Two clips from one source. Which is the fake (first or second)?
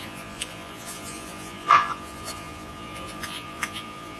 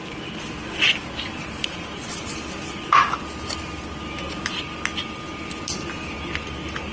first